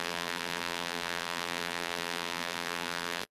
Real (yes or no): no